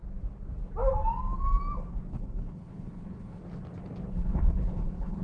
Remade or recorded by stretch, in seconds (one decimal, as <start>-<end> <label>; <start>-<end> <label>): 0.0-2.1 recorded; 2.1-3.4 remade; 3.4-4.1 recorded; 4.1-5.2 remade